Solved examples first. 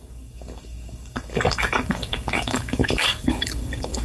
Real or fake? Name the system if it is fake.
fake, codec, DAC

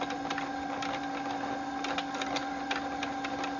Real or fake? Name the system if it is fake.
real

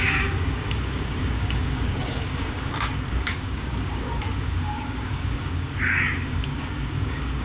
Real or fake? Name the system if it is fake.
fake, codec, DAC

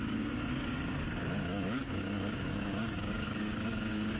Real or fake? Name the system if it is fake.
fake, codec, DAC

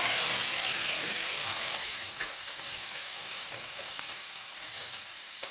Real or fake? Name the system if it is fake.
fake, codec, DAC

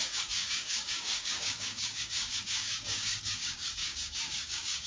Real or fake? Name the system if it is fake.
fake, codec, DAC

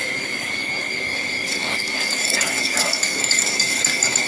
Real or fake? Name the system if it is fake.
fake, codec, DAC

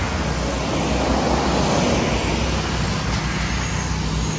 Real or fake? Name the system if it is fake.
real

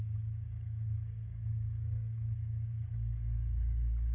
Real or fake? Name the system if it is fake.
fake, codec, DAC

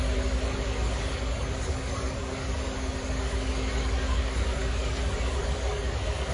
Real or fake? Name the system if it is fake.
fake, codec, DAC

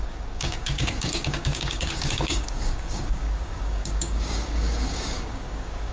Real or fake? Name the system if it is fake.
fake, codec, DAC